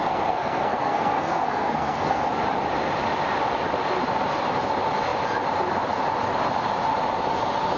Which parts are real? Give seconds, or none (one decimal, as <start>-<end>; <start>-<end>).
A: 2.2-7.8